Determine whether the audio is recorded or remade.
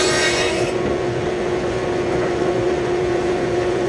remade